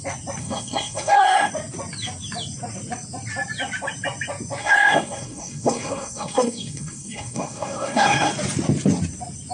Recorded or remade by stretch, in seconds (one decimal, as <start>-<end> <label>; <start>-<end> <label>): 0.0-0.4 recorded; 0.4-1.5 remade; 1.5-4.6 recorded; 4.6-8.3 remade; 8.3-9.5 recorded